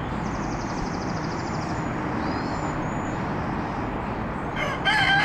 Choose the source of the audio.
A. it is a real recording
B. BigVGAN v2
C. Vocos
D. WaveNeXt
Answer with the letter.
A